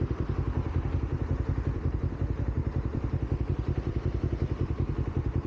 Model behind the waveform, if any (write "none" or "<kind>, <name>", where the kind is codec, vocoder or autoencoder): vocoder, BigVGAN v2